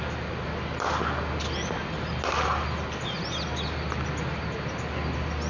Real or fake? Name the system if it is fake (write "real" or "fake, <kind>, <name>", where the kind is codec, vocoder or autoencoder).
real